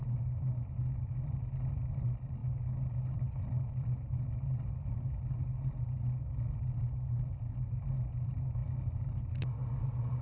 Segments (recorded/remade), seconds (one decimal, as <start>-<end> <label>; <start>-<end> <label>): 0.0-10.2 recorded